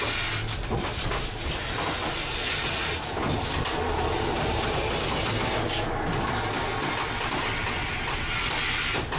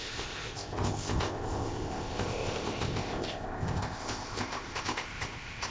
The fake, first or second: second